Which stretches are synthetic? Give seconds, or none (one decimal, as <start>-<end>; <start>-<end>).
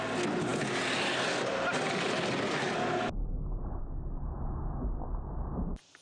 none